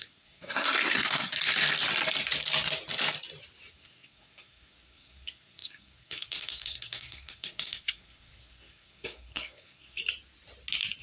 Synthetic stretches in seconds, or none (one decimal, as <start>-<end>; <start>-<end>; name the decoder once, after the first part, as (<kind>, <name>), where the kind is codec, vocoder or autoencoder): 0.0-1.3 (codec, SNAC); 3.7-10.0